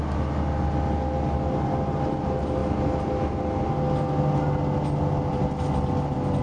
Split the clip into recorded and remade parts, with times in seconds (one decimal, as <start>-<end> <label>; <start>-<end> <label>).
0.0-6.4 recorded